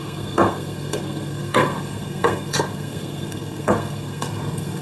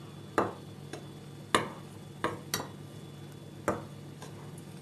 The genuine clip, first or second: second